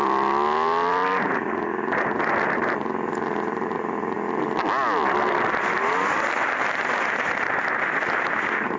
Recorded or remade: recorded